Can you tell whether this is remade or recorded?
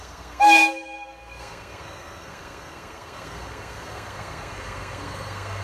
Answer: remade